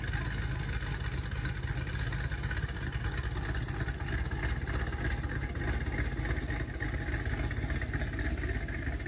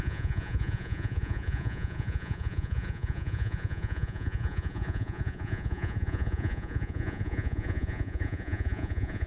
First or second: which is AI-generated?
second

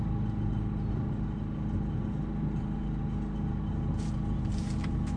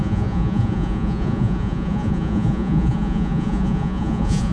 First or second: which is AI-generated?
second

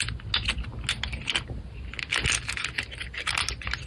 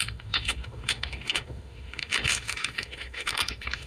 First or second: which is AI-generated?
second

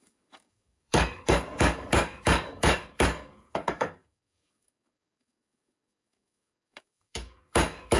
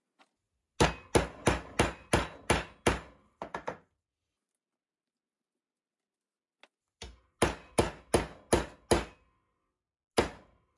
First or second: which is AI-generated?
first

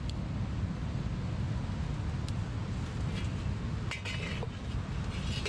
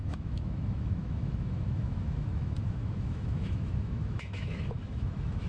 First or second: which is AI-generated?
second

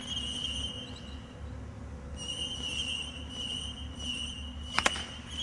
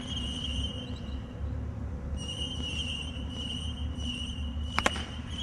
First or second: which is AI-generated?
second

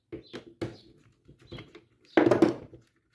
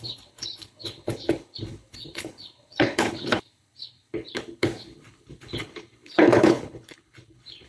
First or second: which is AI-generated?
second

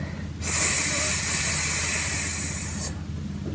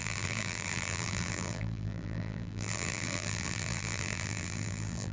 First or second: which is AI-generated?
second